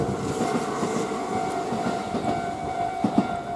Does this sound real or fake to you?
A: real